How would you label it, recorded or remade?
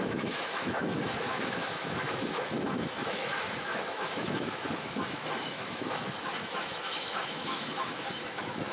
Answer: remade